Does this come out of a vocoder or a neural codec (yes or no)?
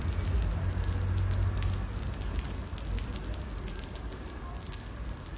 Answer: no